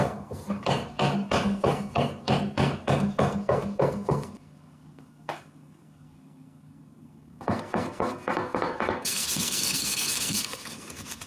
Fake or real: fake